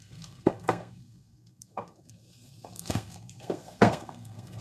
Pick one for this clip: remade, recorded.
remade